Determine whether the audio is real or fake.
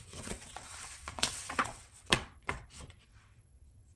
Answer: fake